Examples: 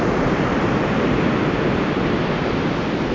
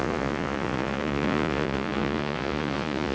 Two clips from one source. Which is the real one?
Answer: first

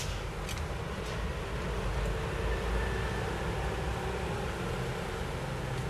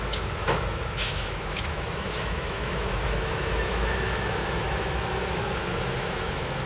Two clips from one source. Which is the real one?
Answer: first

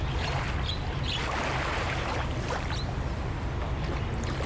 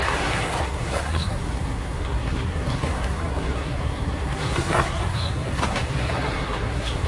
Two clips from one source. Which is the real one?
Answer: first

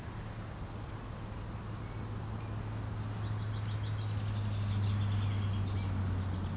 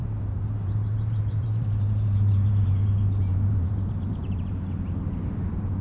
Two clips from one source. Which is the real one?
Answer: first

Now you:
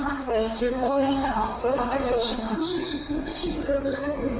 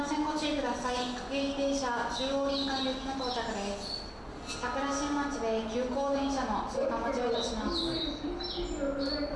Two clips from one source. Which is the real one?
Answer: second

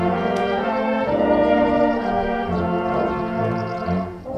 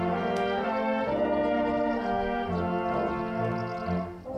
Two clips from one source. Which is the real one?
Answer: second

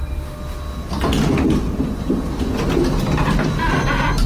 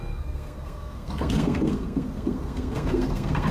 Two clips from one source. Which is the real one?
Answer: first